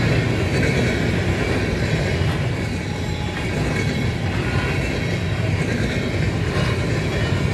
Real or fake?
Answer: real